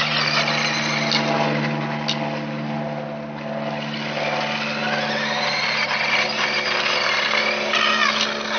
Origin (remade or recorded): recorded